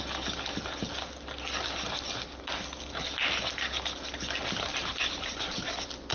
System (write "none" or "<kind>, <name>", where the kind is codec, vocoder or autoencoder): none